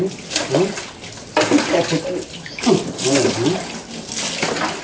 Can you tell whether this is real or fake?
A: real